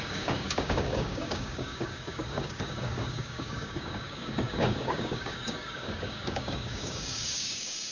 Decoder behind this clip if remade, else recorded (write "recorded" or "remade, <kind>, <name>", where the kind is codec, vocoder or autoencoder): remade, codec, DAC